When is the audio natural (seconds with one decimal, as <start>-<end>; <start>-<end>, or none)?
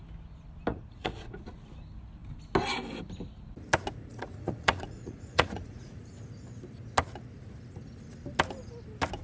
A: 0.0-0.7; 1.4-4.1; 6.0-9.2